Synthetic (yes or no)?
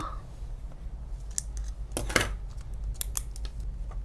no